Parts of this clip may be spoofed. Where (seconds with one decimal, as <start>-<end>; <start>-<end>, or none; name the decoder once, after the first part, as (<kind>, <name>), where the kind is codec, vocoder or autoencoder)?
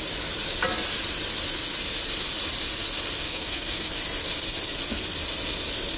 3.2-3.9 (codec, SNAC)